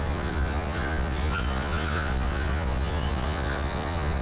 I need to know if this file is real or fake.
fake